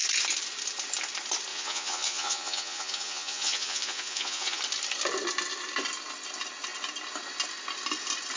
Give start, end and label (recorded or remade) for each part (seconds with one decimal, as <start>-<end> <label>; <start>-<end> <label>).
0.0-1.5 recorded; 1.5-4.6 remade; 4.6-8.4 recorded

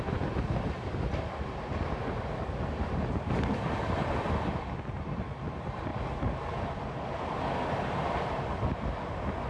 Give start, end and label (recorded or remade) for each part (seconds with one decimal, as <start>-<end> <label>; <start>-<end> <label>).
0.0-9.5 recorded

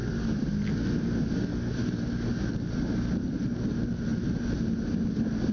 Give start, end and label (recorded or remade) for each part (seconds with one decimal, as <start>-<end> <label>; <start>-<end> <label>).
0.0-5.5 recorded

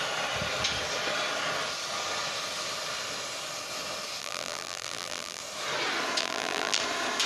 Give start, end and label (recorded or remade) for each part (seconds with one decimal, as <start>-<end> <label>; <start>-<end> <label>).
0.0-4.2 recorded; 4.2-5.4 remade; 5.4-6.2 recorded; 6.2-6.8 remade; 6.8-7.3 recorded

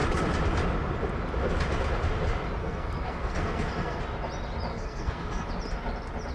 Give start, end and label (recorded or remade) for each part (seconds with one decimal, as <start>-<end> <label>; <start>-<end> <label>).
0.0-2.6 recorded; 2.6-4.0 remade; 4.0-4.7 recorded; 4.7-5.5 remade; 5.5-6.3 recorded